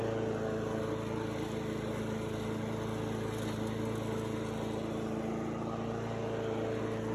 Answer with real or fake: real